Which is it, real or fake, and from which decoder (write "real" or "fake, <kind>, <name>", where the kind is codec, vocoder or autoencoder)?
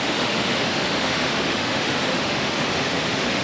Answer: fake, autoencoder, DAC-VAE